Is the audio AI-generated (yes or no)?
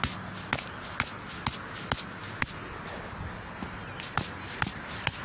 no